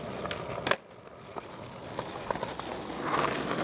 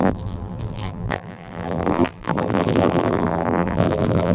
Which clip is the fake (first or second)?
second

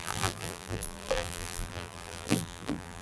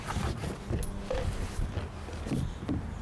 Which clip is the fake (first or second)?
first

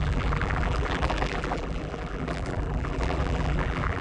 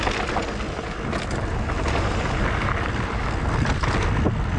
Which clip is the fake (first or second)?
first